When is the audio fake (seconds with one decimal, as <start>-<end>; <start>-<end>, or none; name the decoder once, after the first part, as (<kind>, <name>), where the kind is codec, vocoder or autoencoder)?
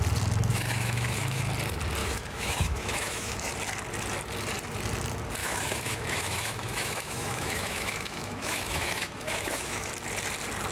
0.5-1.4 (autoencoder, DAC-VAE); 2.0-3.5; 5.4-9.9